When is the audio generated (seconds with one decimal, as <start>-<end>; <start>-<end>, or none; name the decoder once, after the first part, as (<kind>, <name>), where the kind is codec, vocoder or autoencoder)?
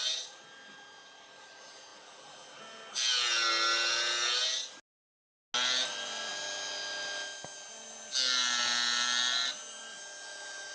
none